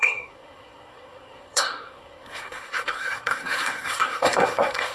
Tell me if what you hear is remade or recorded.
remade